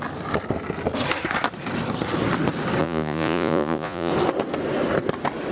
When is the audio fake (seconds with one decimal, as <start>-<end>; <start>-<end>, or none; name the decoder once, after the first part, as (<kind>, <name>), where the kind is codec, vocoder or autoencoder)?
2.8-4.1 (vocoder, Vocos)